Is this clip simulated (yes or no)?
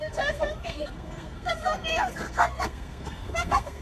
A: yes